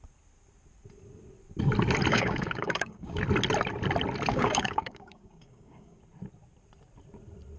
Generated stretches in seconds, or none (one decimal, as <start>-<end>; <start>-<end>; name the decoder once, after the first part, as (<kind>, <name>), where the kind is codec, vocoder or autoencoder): 2.1-3.2 (codec, DAC); 4.3-6.0